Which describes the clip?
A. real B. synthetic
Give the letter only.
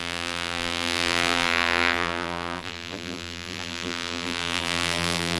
B